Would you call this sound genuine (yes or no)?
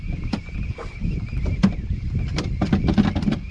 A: yes